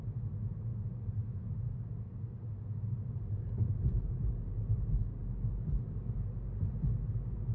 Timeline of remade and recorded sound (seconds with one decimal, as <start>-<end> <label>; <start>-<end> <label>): 0.0-7.5 recorded